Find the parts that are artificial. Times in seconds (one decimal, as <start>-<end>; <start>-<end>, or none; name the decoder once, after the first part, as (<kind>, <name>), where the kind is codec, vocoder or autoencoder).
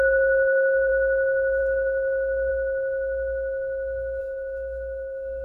0.0-0.9 (codec, SNAC); 1.6-2.5; 4.2-5.4